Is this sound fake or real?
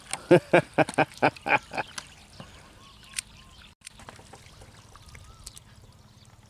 real